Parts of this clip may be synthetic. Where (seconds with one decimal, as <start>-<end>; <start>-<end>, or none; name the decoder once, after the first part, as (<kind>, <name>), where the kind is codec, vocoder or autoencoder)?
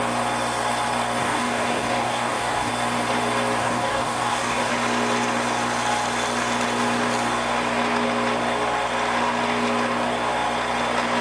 1.2-2.7 (codec, DAC); 3.6-4.7